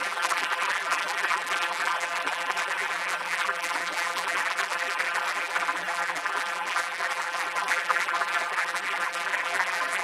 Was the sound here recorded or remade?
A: remade